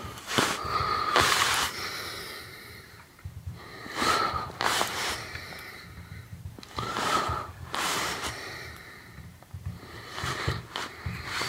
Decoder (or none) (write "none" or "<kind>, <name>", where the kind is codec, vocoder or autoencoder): vocoder, BigVGAN v2